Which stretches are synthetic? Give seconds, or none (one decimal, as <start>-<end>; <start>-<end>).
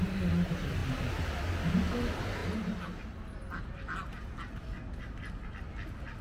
none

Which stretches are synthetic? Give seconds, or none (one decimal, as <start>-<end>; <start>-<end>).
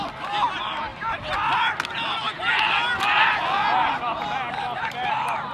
none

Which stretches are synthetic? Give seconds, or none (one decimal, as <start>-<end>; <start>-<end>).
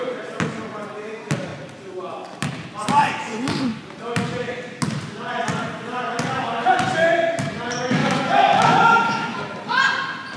8.0-9.4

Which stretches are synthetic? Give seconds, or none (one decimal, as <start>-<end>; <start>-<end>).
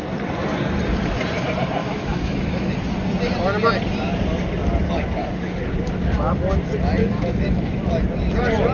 1.8-2.7; 5.2-6.3; 7.0-7.9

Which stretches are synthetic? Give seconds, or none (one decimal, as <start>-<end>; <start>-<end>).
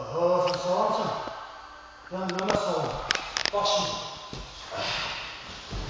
none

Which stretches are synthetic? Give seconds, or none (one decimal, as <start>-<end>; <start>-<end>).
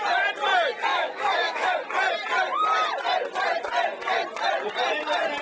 0.9-1.7